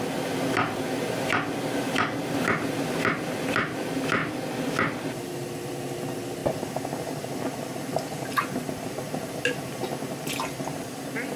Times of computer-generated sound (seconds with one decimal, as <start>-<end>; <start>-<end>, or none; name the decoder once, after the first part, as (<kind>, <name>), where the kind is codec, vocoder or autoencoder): none